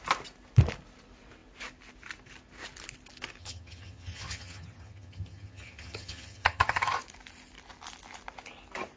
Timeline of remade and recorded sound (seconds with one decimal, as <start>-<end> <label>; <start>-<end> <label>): 0.0-3.4 recorded; 3.4-7.0 remade; 7.0-9.0 recorded